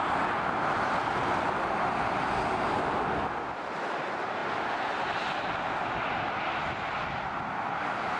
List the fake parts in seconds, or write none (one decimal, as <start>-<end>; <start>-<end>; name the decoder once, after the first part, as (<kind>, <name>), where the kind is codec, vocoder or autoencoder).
none